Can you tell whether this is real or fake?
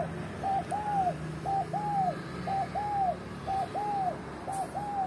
real